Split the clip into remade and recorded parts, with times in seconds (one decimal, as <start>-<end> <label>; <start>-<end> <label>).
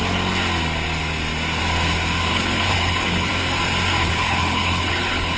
0.0-2.3 recorded; 2.3-3.3 remade; 3.3-4.0 recorded; 4.0-5.4 remade